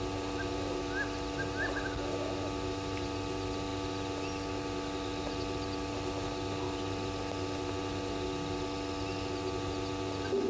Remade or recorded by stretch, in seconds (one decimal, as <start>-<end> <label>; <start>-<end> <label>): 0.0-10.5 recorded

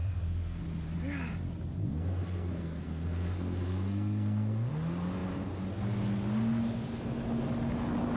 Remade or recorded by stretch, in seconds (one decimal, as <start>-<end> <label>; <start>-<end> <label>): 0.0-0.6 remade; 0.6-1.8 recorded; 1.8-4.7 remade; 4.7-8.2 recorded